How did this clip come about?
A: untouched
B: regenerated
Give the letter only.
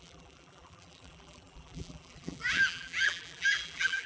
B